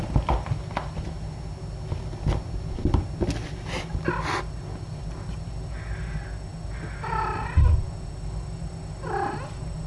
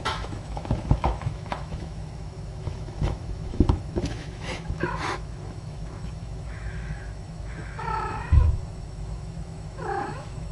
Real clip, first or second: first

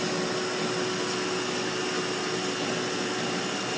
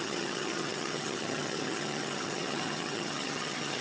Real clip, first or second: first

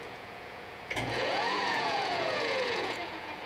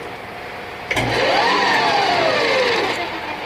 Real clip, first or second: second